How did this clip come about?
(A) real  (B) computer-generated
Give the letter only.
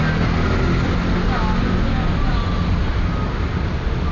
A